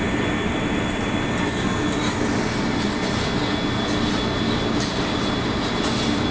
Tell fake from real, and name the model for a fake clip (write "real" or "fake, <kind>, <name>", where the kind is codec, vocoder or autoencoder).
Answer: real